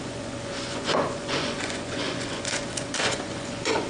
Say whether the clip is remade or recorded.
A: remade